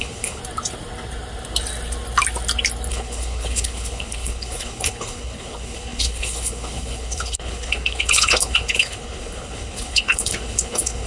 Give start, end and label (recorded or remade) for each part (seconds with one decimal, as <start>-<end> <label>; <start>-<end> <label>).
0.0-0.4 remade; 0.4-2.9 recorded; 2.9-11.1 remade